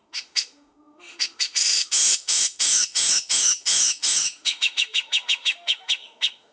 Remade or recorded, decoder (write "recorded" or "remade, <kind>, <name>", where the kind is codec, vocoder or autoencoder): remade, autoencoder, DAC-VAE